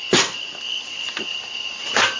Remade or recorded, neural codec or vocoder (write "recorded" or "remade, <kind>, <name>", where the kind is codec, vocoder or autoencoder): recorded